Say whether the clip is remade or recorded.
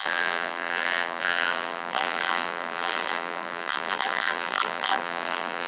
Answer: remade